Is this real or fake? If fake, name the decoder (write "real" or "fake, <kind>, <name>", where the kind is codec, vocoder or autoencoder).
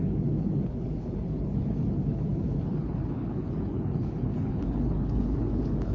fake, codec, HILCodec